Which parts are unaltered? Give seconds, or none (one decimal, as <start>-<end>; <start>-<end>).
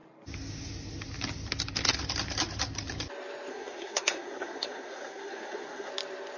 0.0-3.5; 5.9-6.4